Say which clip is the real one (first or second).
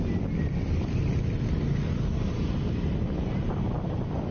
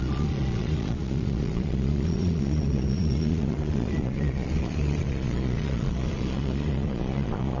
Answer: first